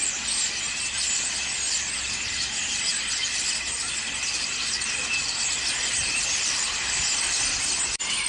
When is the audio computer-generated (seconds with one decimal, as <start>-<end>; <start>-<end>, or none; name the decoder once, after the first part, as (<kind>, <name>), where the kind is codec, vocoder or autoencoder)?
none